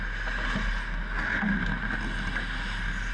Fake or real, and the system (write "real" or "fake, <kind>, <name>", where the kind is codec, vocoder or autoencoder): real